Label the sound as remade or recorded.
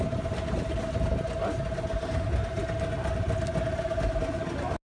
recorded